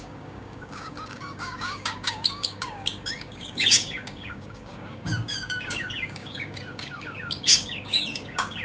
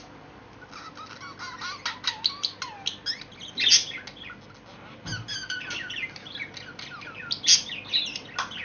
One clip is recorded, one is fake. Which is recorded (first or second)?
second